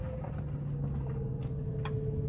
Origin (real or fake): real